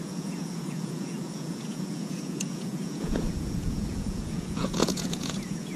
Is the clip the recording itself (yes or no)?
no